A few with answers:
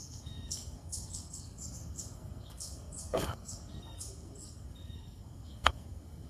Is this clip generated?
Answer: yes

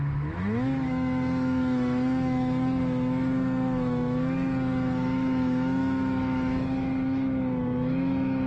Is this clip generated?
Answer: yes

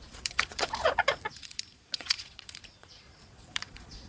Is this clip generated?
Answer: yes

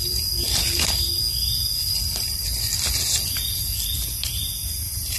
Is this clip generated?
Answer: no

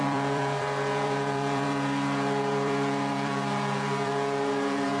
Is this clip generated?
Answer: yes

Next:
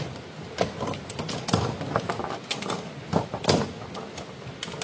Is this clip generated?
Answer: no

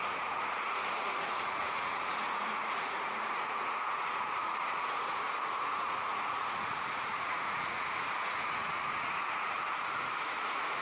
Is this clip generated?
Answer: yes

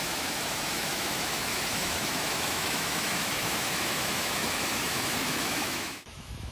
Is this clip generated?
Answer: yes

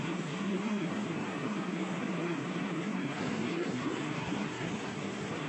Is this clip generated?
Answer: yes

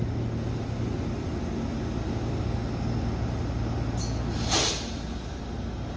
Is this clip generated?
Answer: no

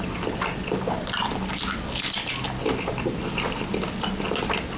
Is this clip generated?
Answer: no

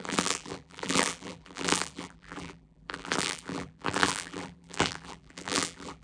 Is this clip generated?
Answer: yes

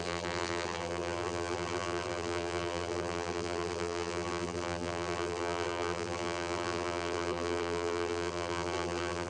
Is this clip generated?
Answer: yes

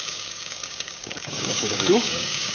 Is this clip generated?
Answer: yes